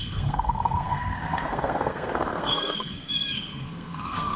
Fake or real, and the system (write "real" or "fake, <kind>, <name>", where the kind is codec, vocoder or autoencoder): fake, codec, SNAC